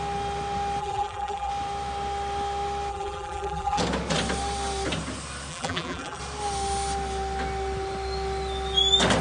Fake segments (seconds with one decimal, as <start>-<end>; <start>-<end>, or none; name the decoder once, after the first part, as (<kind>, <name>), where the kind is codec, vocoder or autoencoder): 0.8-1.5 (vocoder, BigVGAN v2); 2.9-3.8; 5.5-6.2